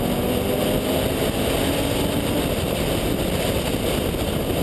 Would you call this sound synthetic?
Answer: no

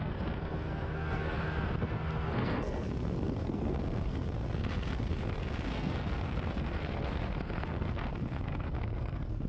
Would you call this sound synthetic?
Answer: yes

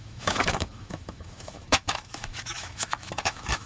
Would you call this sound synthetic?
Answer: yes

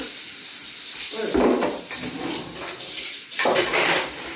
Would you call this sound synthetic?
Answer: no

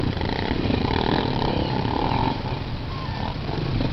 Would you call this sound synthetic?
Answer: yes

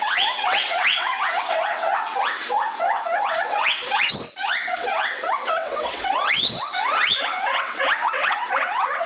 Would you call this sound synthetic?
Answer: yes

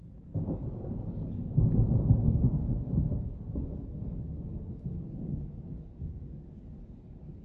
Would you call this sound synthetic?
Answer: yes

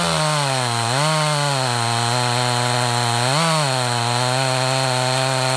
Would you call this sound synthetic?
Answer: no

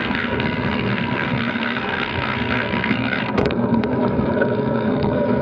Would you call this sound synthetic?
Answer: yes